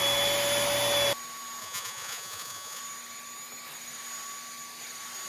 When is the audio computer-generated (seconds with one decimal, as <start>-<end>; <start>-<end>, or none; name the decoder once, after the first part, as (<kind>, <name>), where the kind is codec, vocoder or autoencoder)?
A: 1.6-2.8 (vocoder, Vocos)